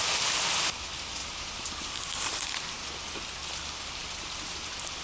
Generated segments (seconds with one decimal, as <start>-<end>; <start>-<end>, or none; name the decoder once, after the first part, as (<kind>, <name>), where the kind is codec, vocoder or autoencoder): 1.2-2.7 (vocoder, BigVGAN v2)